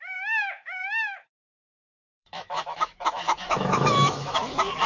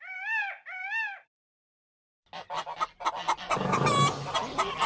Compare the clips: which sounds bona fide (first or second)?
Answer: second